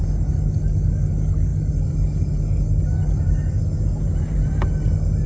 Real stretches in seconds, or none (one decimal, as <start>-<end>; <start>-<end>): 0.0-5.3